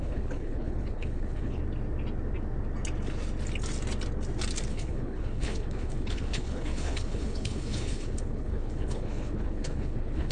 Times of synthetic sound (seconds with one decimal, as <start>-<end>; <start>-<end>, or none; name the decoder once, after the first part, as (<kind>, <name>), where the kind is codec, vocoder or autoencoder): 0.0-1.6 (codec, HILCodec); 4.7-10.3